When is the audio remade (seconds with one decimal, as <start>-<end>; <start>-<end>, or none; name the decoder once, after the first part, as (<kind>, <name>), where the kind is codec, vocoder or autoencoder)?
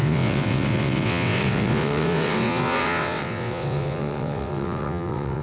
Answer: 0.0-5.4 (vocoder, WaveNeXt)